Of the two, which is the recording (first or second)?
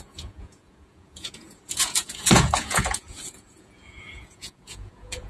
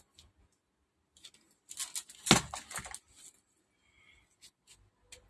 second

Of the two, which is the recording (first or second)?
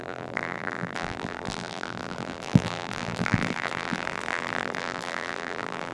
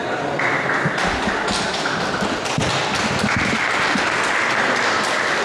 second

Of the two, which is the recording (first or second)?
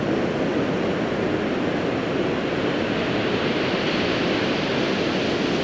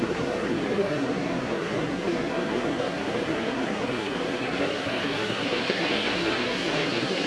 first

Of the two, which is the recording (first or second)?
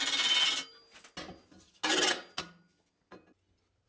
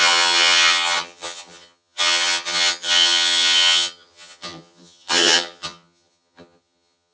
first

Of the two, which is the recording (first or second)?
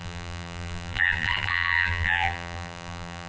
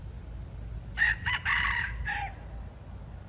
second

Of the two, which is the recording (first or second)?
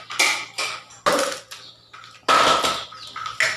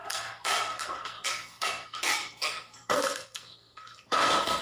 first